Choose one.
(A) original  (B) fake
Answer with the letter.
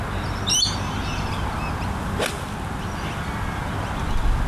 A